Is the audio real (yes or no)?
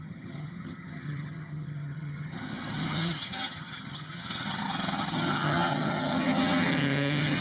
no